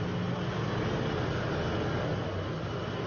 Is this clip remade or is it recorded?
recorded